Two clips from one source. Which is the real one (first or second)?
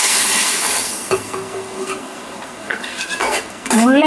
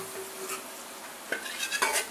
second